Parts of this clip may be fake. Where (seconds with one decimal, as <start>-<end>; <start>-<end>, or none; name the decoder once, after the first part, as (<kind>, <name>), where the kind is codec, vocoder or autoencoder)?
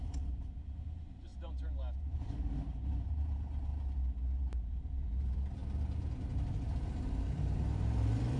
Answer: 0.0-1.3 (vocoder, BigVGAN v2); 2.0-3.7; 4.4-5.6; 6.5-8.4